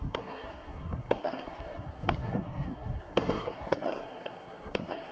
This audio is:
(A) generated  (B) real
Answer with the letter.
A